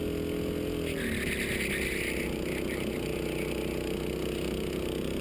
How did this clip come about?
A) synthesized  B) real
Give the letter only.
B